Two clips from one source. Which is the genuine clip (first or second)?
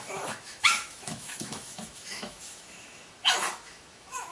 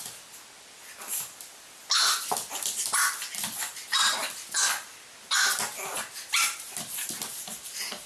second